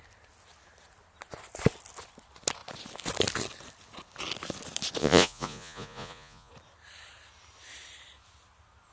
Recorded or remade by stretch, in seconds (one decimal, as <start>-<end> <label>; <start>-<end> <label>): 0.0-5.0 recorded; 5.0-6.5 remade; 6.5-8.9 recorded